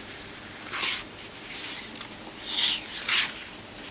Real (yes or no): yes